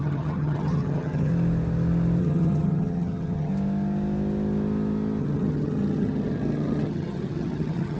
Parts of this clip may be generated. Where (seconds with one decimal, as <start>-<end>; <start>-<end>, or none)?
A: 0.0-1.3; 2.2-3.5; 5.2-8.0